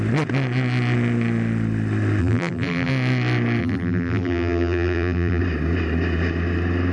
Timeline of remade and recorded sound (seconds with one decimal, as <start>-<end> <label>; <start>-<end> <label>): 0.0-2.2 recorded; 2.2-2.9 remade; 2.9-3.6 recorded; 3.6-5.4 remade; 5.4-6.9 recorded